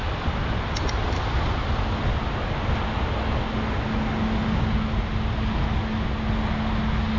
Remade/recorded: recorded